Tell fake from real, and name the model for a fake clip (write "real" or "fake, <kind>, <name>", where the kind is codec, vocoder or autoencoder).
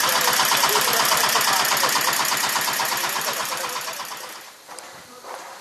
fake, vocoder, BigVGAN v2